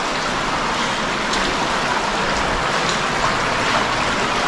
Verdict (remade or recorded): recorded